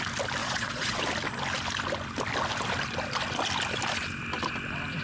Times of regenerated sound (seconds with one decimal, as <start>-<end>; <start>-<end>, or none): 0.4-1.0